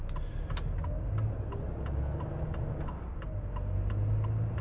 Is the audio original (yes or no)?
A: yes